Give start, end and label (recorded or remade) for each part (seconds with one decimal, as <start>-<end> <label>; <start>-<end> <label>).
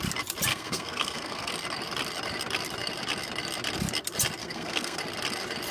0.0-0.5 recorded; 0.5-1.5 remade; 1.5-4.4 recorded; 4.4-5.0 remade; 5.0-5.7 recorded